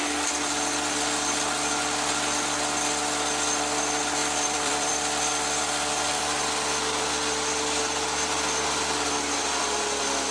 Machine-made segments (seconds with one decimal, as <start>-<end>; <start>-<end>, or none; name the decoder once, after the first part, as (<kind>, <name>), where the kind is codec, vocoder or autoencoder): 4.2-6.2 (vocoder, BigVGAN v2)

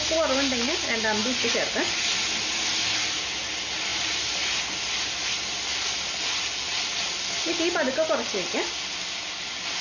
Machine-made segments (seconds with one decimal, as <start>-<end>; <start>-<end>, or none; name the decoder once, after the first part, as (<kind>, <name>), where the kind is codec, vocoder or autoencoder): 3.9-4.6 (vocoder, BigVGAN v2)

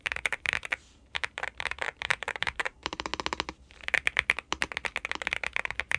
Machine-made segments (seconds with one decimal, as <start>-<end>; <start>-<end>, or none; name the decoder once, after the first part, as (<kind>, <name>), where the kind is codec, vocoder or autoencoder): 0.0-3.1 (vocoder, BigVGAN v2); 5.3-6.0